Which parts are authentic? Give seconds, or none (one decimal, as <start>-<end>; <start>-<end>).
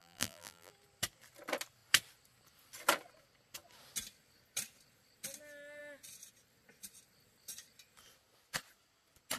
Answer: 0.7-9.4